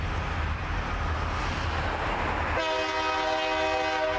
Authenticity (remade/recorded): recorded